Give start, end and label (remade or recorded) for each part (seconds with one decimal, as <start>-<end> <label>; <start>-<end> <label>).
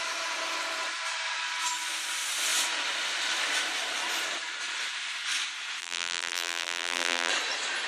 0.0-5.8 recorded; 5.8-7.3 remade; 7.3-7.9 recorded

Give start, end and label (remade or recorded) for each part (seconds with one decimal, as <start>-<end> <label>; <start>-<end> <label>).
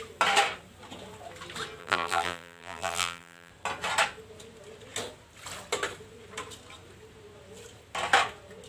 0.0-1.8 recorded; 1.8-3.5 remade; 3.5-8.7 recorded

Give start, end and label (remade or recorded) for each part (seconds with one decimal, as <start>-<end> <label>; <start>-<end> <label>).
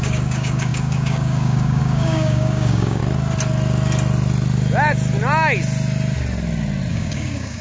0.0-3.0 remade; 3.0-6.9 recorded; 6.9-7.6 remade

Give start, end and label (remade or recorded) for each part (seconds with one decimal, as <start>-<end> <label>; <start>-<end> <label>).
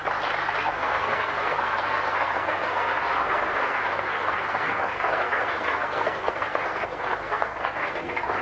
0.0-0.6 recorded; 0.6-8.4 remade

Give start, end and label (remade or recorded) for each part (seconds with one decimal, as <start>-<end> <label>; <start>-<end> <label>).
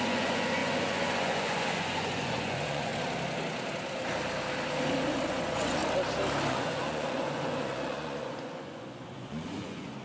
0.0-2.9 remade; 2.9-5.3 recorded; 5.3-5.8 remade; 5.8-6.5 recorded; 6.5-10.0 remade